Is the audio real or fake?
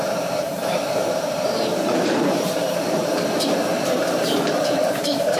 fake